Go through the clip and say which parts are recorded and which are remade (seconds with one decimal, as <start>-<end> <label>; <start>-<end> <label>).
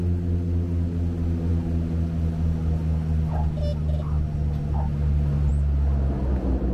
0.0-6.7 recorded